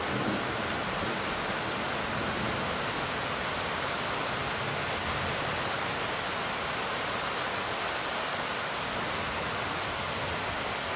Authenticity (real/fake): real